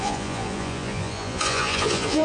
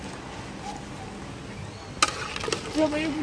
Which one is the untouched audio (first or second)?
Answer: second